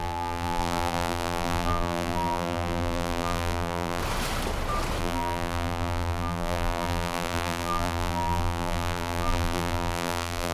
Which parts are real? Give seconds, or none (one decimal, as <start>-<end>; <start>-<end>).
4.0-5.0